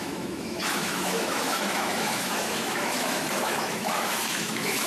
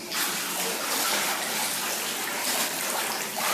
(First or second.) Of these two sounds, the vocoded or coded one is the first